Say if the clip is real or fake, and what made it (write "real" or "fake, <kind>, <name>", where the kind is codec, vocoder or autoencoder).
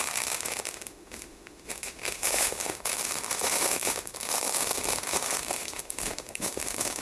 fake, autoencoder, DAC-VAE